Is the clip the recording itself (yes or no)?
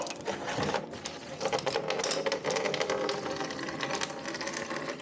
yes